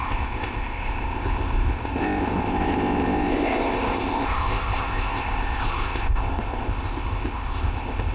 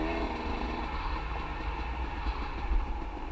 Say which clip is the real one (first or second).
second